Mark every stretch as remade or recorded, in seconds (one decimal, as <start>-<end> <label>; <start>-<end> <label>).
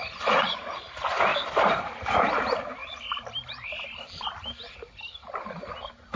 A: 0.0-6.2 recorded